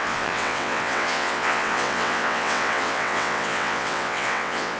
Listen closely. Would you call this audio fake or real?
fake